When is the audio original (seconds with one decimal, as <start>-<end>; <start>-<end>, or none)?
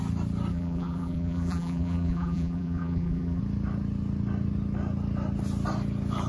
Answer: 0.0-0.5; 3.4-6.3